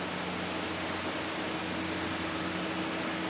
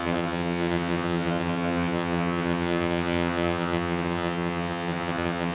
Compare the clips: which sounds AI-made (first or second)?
second